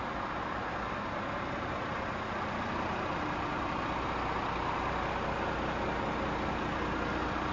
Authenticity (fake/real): real